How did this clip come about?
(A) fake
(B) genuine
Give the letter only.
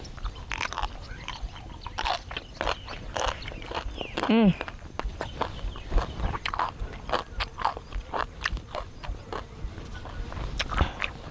B